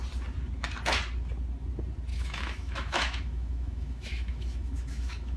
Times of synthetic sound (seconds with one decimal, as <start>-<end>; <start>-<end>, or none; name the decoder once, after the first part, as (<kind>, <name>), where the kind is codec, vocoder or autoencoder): 2.1-5.4 (autoencoder, DAC-VAE)